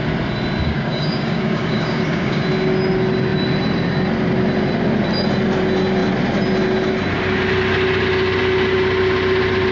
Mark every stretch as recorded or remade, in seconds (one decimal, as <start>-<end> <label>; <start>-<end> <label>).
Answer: 0.0-0.6 recorded; 0.6-2.4 remade; 2.4-9.7 recorded